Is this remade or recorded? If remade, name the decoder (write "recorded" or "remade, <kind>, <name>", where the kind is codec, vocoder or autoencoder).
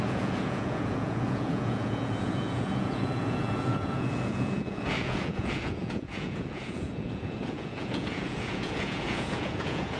remade, vocoder, Vocos